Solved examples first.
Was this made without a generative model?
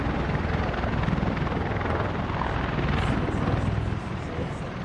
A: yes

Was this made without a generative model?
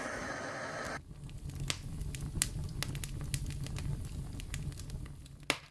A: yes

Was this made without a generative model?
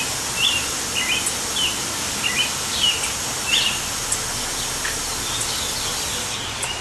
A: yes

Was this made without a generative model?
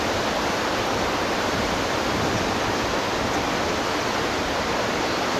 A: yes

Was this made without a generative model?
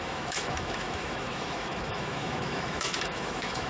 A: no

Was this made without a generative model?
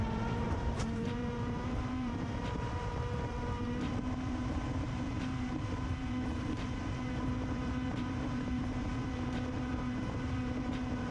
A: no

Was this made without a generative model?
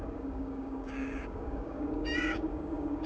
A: no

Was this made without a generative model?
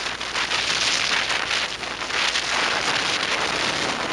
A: yes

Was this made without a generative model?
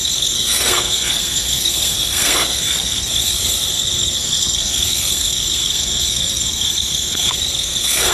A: no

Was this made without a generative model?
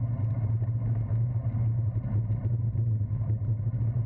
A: yes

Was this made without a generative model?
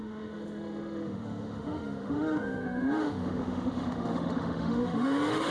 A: no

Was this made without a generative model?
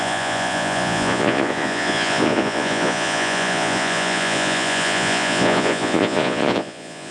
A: no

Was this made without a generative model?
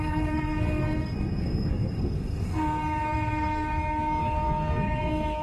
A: no